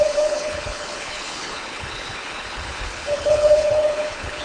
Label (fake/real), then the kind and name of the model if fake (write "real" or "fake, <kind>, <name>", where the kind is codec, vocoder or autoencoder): fake, codec, HILCodec